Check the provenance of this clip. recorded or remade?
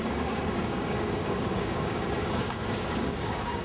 remade